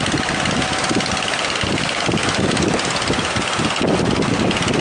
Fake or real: real